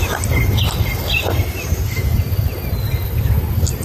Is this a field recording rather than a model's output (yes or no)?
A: yes